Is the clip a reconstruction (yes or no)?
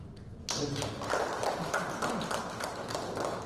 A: no